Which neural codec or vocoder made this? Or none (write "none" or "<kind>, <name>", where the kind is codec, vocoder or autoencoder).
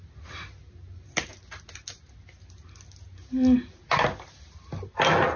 none